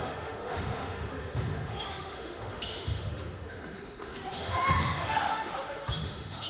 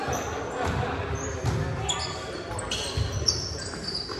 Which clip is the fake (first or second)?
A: first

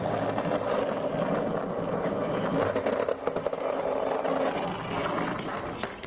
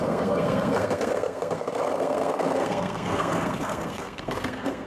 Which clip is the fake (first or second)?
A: second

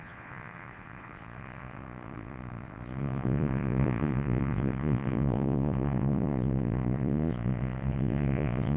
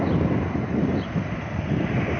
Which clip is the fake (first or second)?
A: first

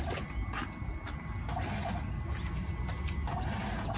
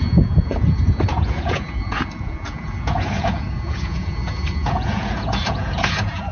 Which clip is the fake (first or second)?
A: second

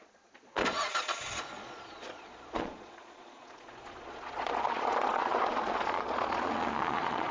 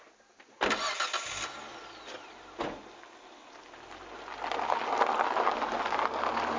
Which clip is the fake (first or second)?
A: first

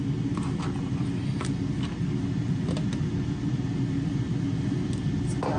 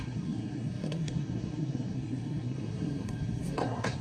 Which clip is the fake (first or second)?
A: second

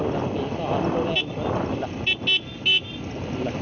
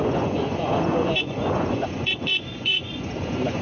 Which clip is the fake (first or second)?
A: second